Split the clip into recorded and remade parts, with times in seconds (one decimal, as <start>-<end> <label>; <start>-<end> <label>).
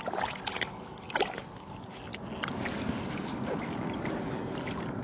0.0-5.0 recorded